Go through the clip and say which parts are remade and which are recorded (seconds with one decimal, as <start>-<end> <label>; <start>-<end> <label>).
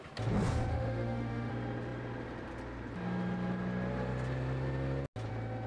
0.0-0.7 recorded; 0.7-1.5 remade; 1.5-5.7 recorded